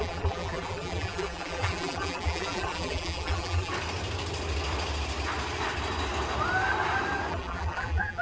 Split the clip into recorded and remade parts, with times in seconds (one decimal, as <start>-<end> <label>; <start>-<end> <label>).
0.0-3.7 remade; 3.7-7.3 recorded; 7.3-8.2 remade